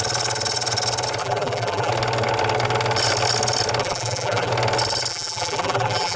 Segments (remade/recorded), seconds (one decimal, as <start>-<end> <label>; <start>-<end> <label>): 0.0-1.2 recorded; 1.2-1.9 remade; 1.9-3.8 recorded; 3.8-4.5 remade; 4.5-5.1 recorded; 5.1-6.2 remade